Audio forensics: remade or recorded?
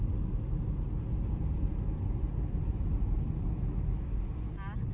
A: recorded